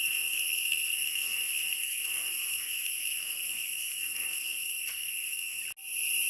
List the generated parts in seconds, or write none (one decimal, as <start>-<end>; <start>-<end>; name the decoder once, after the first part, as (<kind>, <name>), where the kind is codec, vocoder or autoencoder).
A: 0.0-5.6 (codec, SNAC)